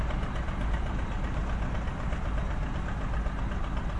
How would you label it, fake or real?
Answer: real